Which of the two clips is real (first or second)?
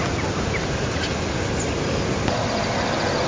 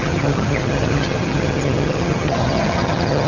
first